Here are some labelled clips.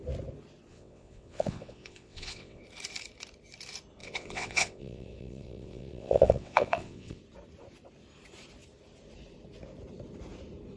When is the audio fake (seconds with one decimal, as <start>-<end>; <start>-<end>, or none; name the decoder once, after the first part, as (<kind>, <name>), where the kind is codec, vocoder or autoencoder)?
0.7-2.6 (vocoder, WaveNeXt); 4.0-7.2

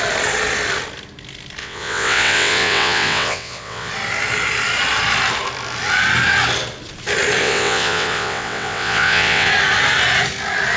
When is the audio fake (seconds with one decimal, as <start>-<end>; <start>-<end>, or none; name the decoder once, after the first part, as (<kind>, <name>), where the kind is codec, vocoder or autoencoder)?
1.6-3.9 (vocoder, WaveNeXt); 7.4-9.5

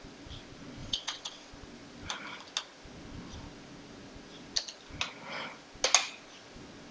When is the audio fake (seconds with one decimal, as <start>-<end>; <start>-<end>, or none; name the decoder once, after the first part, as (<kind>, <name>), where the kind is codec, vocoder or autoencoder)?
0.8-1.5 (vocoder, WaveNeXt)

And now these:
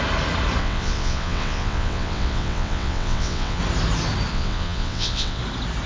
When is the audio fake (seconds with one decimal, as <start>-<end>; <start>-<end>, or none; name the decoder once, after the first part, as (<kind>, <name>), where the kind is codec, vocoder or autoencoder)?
0.6-3.6 (vocoder, WaveNeXt); 4.3-5.4